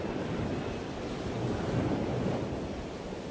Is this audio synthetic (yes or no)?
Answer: no